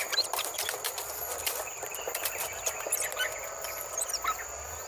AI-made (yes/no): yes